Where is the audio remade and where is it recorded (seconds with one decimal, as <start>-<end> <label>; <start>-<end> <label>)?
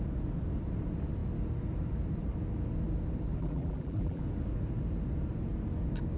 0.0-3.4 recorded; 3.4-4.2 remade; 4.2-6.2 recorded